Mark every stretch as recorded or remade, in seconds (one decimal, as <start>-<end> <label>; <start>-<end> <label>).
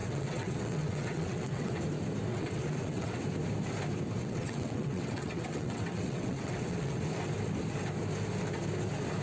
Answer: 0.0-1.8 remade; 1.8-2.3 recorded; 2.3-3.2 remade; 3.2-4.2 recorded; 4.2-7.0 remade; 7.0-9.2 recorded